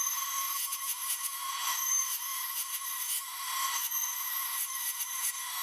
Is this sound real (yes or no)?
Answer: no